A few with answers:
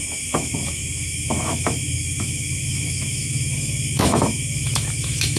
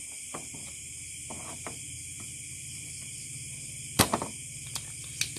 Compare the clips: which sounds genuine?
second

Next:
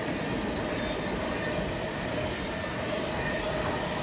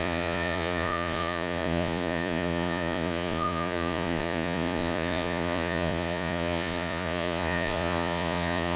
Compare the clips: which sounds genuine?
first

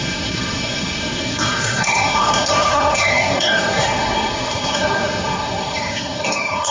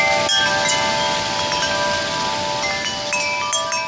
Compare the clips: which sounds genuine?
second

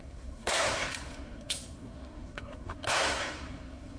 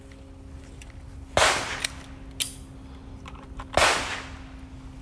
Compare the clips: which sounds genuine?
second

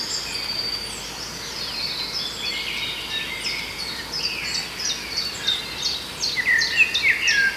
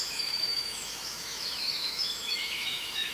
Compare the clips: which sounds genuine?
first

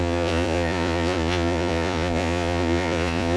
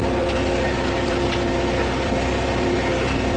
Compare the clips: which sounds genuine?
second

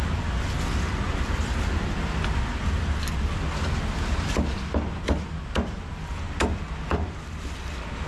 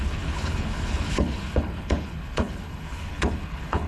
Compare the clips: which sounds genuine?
first